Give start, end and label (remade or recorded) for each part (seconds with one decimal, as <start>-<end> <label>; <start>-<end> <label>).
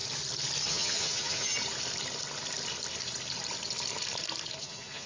0.0-0.7 recorded; 0.7-1.5 remade; 1.5-4.6 recorded; 4.6-5.1 remade